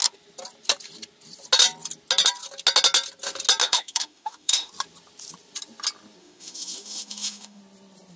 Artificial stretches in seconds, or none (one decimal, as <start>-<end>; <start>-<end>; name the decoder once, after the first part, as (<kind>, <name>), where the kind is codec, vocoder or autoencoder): 3.6-4.7 (autoencoder, DAC-VAE); 6.2-7.6